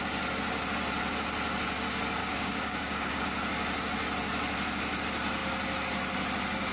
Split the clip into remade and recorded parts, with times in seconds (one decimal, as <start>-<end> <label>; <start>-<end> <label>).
0.0-2.2 recorded; 2.2-3.2 remade; 3.2-6.7 recorded